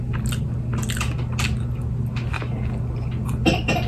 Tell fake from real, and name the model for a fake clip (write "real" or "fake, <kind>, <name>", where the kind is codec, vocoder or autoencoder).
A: real